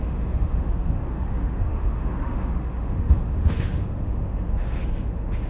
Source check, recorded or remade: remade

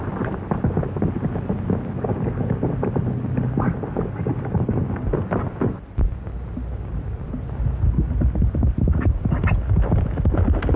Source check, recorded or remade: recorded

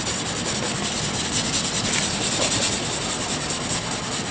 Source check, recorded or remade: recorded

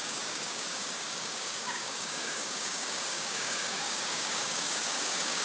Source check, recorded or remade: remade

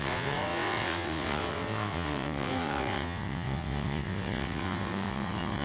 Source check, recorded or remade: remade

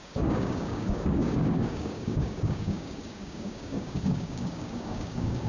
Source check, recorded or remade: remade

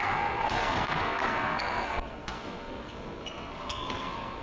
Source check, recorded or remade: remade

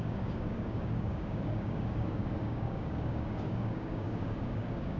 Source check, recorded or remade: remade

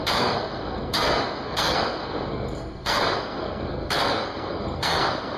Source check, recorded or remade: remade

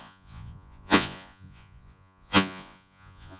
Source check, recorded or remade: remade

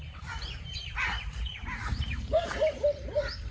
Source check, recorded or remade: remade